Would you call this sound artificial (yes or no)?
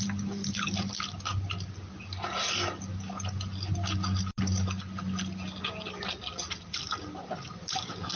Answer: no